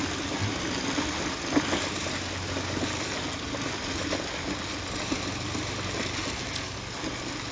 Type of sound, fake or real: real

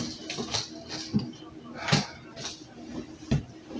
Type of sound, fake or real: real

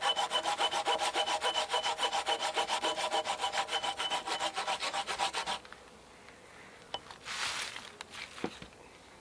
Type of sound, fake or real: real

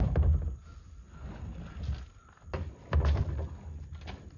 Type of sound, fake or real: real